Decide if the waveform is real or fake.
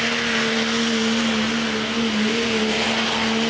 real